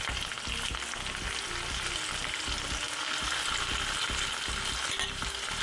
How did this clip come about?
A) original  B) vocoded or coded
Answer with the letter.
A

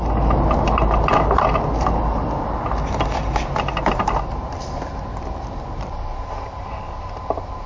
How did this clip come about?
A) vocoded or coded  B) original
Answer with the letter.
B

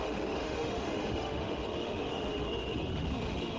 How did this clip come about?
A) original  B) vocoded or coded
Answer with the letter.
B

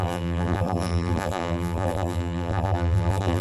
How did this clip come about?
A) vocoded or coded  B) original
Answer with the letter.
A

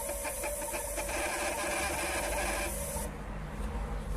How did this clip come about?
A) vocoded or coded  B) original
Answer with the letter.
B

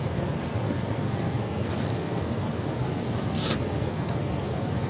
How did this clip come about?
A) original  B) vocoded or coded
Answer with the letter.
B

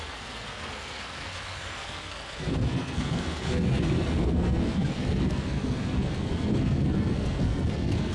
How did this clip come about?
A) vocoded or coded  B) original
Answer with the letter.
A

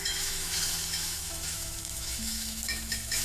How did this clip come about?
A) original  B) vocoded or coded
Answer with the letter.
B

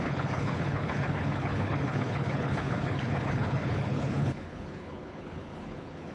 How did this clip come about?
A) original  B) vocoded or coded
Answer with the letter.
B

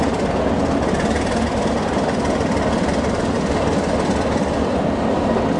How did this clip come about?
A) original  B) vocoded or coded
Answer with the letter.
A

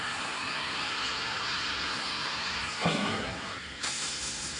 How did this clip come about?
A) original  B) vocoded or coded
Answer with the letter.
B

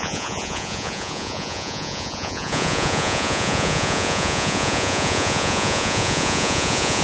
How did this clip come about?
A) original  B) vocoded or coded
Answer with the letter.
B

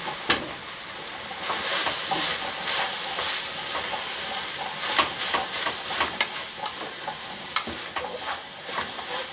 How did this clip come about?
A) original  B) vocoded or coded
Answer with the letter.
A